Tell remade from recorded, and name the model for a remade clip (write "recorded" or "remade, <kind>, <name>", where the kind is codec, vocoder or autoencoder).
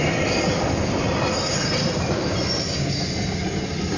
recorded